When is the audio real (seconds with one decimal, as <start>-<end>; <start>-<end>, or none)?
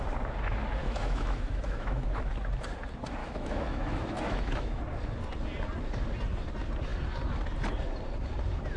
0.0-0.8; 2.3-3.2; 4.8-8.8